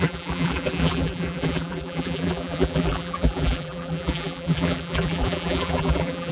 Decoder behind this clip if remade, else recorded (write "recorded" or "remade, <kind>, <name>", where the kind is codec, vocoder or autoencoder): remade, vocoder, BigVGAN v2